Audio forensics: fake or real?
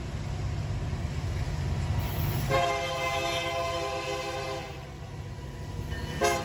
real